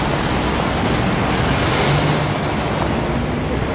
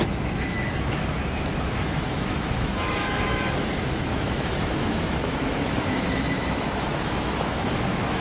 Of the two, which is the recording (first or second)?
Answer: first